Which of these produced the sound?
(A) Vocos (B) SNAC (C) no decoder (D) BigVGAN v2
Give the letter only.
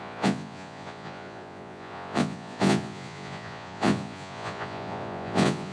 A